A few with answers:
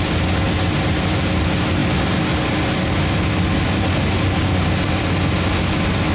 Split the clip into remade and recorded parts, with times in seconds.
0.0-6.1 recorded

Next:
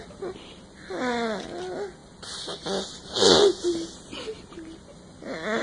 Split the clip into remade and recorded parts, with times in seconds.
0.0-5.6 recorded